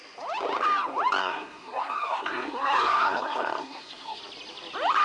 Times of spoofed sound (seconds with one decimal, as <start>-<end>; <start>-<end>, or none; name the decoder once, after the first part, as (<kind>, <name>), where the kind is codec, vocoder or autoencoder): 1.2-4.2 (codec, SNAC)

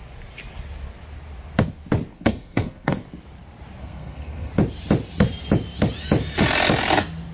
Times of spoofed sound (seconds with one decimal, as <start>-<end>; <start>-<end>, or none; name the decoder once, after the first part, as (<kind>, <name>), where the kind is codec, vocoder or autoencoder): 2.1-3.0 (codec, SNAC); 3.8-4.5

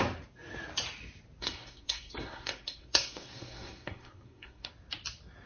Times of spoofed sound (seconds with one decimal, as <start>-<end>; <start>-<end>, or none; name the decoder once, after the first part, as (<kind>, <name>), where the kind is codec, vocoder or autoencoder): 1.4-4.7 (codec, SNAC)

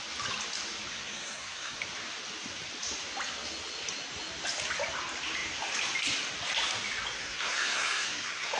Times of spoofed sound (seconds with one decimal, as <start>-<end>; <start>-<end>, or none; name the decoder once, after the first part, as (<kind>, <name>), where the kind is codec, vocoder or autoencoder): 0.9-1.8 (codec, SNAC); 7.2-8.6